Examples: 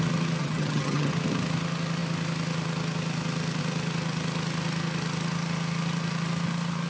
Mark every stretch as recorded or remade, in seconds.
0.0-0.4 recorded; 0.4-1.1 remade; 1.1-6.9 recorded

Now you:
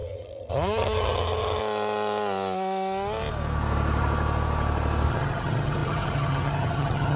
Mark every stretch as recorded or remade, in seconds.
0.0-1.6 remade; 1.6-5.1 recorded; 5.1-7.2 remade

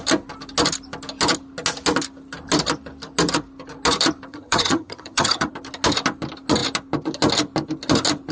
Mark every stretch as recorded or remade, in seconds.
0.0-4.3 recorded; 4.3-5.5 remade; 5.5-8.3 recorded

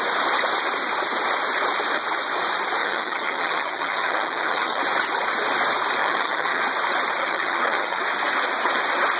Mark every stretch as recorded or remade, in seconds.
0.0-2.8 recorded; 2.8-4.8 remade; 4.8-6.0 recorded; 6.0-6.6 remade; 6.6-7.2 recorded; 7.2-8.0 remade; 8.0-9.2 recorded

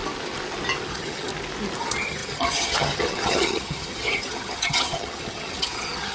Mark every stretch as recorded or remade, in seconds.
0.0-0.9 recorded; 0.9-1.3 remade; 1.3-1.8 recorded; 1.8-6.1 remade

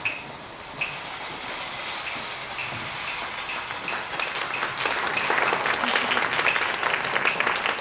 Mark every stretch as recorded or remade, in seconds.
0.0-7.8 recorded